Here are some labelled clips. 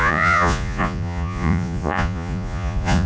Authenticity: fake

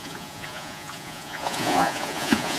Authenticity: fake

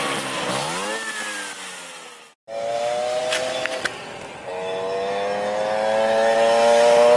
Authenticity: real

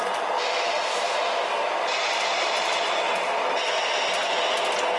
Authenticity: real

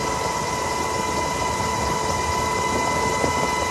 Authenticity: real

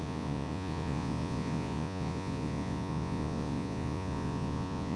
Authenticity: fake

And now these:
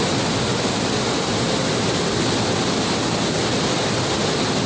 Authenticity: real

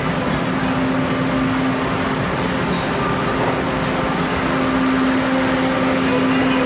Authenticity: real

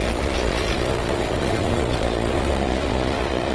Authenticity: fake